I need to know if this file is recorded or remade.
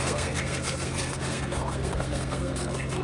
remade